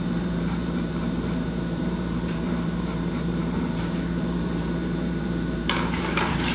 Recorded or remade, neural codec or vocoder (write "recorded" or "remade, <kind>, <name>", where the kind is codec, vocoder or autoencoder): remade, vocoder, BigVGAN v2